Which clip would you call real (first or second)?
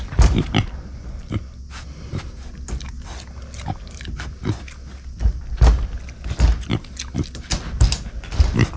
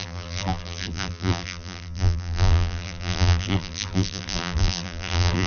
first